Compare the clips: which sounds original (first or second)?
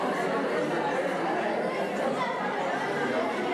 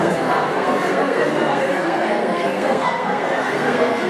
first